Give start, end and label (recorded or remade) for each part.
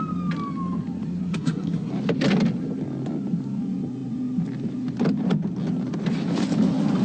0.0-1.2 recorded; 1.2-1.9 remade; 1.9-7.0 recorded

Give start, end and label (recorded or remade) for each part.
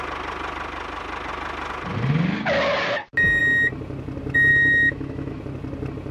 0.0-4.5 recorded; 4.5-5.4 remade; 5.4-6.1 recorded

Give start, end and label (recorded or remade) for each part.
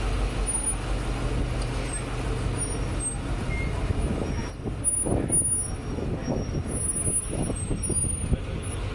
0.0-8.9 recorded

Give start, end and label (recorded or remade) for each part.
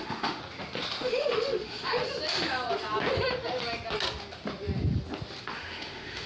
0.0-0.4 remade; 0.4-1.0 recorded; 1.0-2.0 remade; 2.0-5.4 recorded; 5.4-6.3 remade